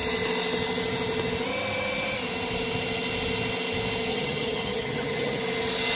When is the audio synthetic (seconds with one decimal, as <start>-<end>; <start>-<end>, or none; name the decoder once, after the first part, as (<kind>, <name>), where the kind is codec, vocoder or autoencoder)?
4.1-5.4 (vocoder, HiFi-GAN)